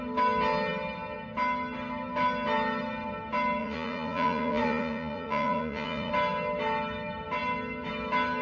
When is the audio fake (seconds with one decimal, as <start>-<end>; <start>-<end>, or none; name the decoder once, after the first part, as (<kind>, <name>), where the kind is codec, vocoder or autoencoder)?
3.6-6.1 (vocoder, Vocos)